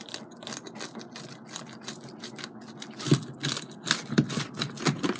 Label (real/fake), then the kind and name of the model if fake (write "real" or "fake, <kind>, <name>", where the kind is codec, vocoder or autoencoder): real